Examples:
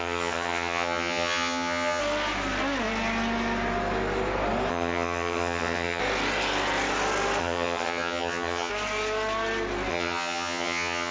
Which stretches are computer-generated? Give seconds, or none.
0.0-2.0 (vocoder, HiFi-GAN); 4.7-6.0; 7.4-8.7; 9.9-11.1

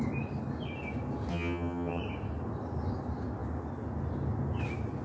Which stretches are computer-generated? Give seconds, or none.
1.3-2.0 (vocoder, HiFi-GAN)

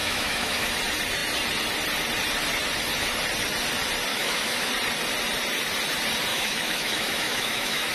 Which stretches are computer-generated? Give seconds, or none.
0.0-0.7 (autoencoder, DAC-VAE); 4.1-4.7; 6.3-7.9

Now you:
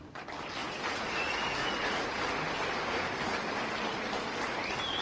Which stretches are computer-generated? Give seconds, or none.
0.6-2.2 (vocoder, Vocos)

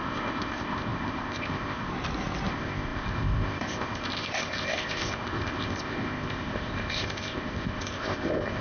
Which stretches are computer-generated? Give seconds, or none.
0.0-1.9 (codec, ZipCodec); 2.5-8.6

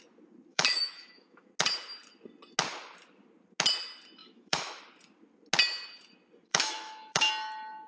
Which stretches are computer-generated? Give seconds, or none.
0.5-1.5 (autoencoder, DAC-VAE); 4.2-4.8; 6.5-7.3

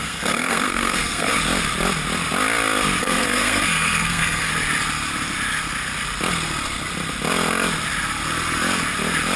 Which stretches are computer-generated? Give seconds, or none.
0.0-1.3 (codec, SNAC); 3.0-4.5